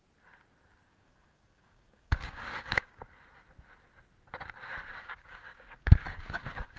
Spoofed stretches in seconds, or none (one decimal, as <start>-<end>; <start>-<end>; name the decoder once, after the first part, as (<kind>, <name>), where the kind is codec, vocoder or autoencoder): 0.9-3.0 (codec, DAC); 4.9-6.8